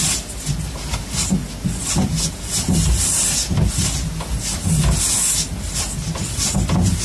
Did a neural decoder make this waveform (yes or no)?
no